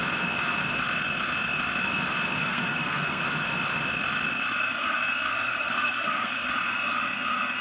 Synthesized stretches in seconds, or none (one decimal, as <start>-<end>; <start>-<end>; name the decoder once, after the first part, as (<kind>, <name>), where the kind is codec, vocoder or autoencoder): 2.4-3.2 (codec, SNAC); 5.3-6.3